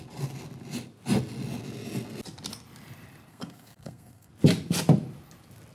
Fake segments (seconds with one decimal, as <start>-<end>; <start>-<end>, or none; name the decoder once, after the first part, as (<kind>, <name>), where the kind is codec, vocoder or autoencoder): 3.3-4.3 (codec, SNAC)